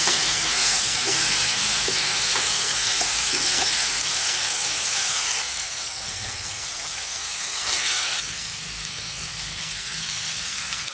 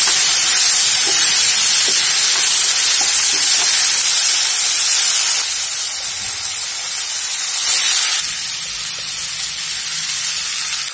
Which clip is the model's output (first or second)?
first